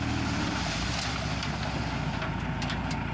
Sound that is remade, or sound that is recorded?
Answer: recorded